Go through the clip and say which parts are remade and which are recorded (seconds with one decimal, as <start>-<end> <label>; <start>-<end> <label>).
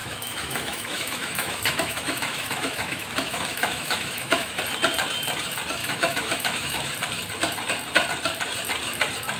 0.0-4.6 remade; 4.6-5.8 recorded; 5.8-6.9 remade; 6.9-9.4 recorded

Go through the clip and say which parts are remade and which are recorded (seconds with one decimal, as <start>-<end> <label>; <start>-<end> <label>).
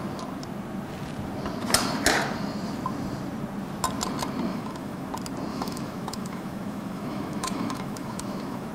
0.0-4.5 recorded; 4.5-5.1 remade; 5.1-5.5 recorded; 5.5-8.7 remade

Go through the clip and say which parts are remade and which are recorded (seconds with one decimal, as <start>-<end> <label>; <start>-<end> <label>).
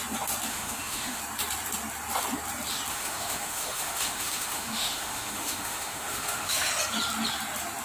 0.0-0.5 recorded; 0.5-1.2 remade; 1.2-2.9 recorded; 2.9-6.7 remade; 6.7-7.8 recorded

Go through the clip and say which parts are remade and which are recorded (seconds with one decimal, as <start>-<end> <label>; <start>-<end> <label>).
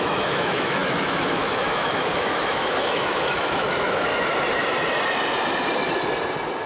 0.0-4.1 remade; 4.1-6.7 recorded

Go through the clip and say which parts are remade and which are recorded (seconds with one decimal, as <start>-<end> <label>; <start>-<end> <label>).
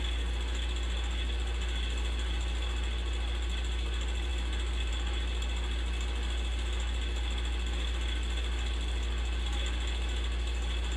0.0-11.0 recorded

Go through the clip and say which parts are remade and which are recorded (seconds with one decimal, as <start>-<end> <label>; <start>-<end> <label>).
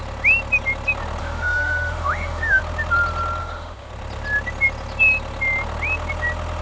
0.0-1.2 recorded; 1.2-2.6 remade; 2.6-3.4 recorded; 3.4-3.9 remade; 3.9-6.6 recorded